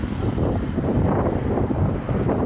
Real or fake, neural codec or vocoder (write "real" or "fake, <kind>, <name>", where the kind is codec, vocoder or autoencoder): fake, vocoder, BigVGAN v2